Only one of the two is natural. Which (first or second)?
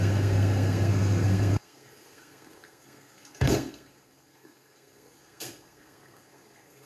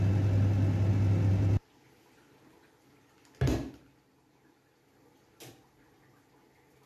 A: second